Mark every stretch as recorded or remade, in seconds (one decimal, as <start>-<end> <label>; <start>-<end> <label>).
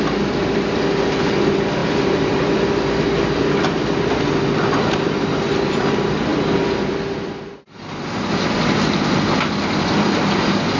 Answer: 0.0-1.8 recorded; 1.8-4.2 remade; 4.2-6.3 recorded; 6.3-6.8 remade; 6.8-10.8 recorded